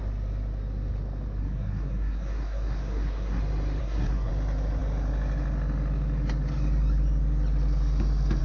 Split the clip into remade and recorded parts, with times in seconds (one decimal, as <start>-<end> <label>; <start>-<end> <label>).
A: 0.0-1.4 recorded; 1.4-3.4 remade; 3.4-3.8 recorded; 3.8-4.3 remade; 4.3-8.4 recorded